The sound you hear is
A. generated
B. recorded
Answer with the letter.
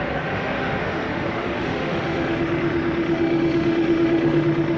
A